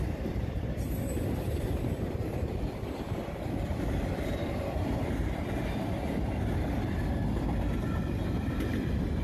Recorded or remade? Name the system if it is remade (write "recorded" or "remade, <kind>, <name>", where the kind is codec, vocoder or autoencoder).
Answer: recorded